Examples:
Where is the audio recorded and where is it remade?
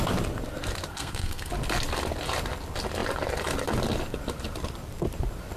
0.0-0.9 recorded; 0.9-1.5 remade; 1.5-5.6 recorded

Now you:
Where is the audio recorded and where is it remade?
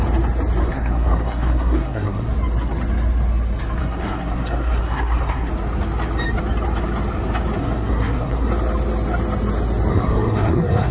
0.0-0.6 recorded; 0.6-2.3 remade; 2.3-3.8 recorded; 3.8-5.5 remade; 5.5-7.6 recorded; 7.6-8.5 remade; 8.5-9.9 recorded; 9.9-10.9 remade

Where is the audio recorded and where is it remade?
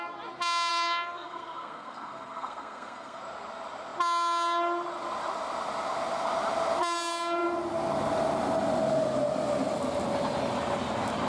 0.0-0.7 recorded; 0.7-3.2 remade; 3.2-11.3 recorded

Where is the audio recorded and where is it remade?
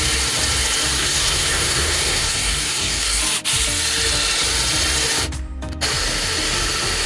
0.0-1.0 recorded; 1.0-3.2 remade; 3.2-7.1 recorded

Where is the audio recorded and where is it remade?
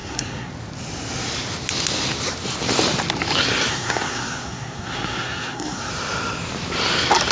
0.0-0.5 remade; 0.5-3.7 recorded; 3.7-5.9 remade; 5.9-7.3 recorded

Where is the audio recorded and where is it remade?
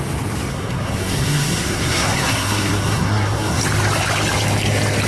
0.0-0.5 recorded; 0.5-3.6 remade; 3.6-5.1 recorded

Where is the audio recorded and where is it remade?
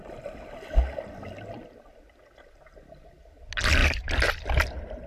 0.0-5.1 recorded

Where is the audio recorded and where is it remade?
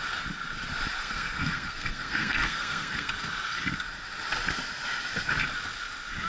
0.0-1.0 recorded; 1.0-3.1 remade; 3.1-6.3 recorded